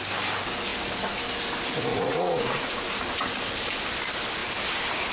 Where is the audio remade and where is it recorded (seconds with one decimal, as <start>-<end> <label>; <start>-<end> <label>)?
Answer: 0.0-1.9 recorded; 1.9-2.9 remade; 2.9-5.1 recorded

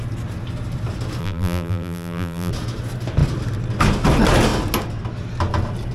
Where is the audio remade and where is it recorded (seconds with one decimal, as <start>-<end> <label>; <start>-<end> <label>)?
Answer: 0.0-1.2 recorded; 1.2-2.5 remade; 2.5-5.9 recorded

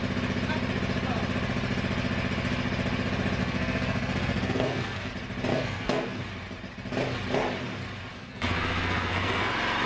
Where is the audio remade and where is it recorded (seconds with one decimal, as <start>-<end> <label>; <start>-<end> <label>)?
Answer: 0.0-3.4 recorded; 3.4-5.1 remade; 5.1-5.5 recorded; 5.5-6.2 remade; 6.2-8.1 recorded; 8.1-9.5 remade; 9.5-9.9 recorded

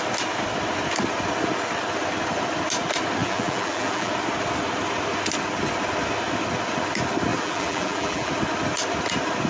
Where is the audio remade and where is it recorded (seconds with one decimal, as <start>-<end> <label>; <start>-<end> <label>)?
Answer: 0.0-3.2 recorded; 3.2-4.1 remade; 4.1-7.3 recorded; 7.3-8.3 remade; 8.3-9.5 recorded

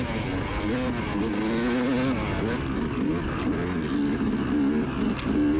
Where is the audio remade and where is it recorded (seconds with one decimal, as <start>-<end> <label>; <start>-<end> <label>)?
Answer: 0.0-5.6 recorded